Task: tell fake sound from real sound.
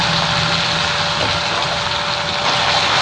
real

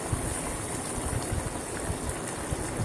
real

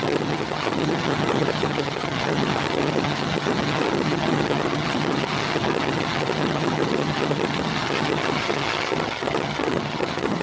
fake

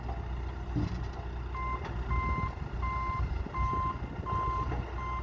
real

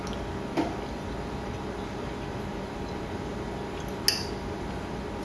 real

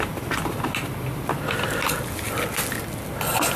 real